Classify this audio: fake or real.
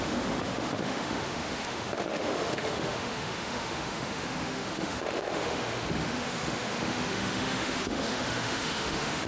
fake